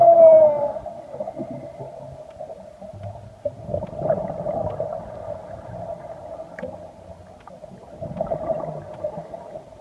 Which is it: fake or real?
real